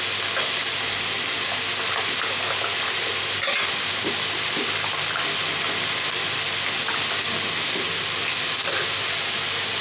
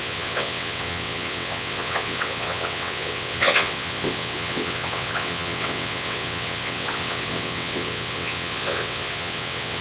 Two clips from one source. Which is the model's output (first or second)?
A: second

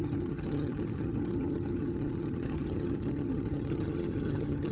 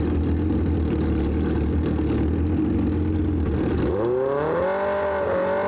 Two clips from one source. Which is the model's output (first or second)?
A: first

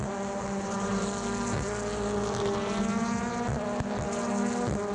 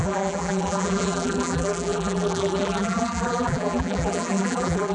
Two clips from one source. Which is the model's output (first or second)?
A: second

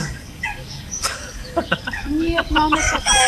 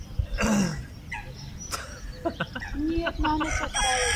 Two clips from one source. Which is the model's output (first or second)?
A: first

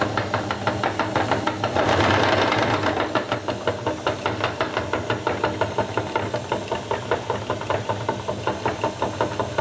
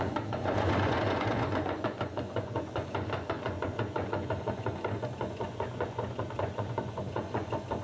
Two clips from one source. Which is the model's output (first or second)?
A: second